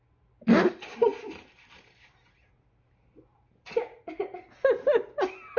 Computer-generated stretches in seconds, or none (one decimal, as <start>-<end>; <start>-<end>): none